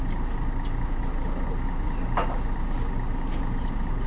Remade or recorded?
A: recorded